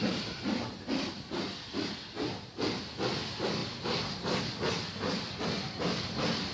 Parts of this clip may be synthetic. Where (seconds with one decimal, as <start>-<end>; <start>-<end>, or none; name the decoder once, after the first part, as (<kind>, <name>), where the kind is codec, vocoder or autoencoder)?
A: none